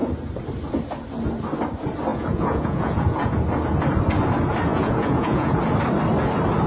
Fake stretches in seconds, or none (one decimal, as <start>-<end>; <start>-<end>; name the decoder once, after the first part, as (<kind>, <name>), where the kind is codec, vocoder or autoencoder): 2.1-3.3 (vocoder, Vocos); 4.7-5.6